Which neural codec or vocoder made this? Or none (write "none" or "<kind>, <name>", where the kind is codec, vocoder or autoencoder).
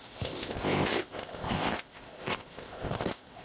codec, ZipCodec